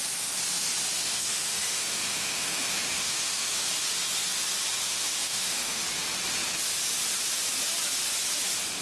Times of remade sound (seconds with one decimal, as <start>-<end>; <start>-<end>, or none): 1.0-3.7; 4.8-5.8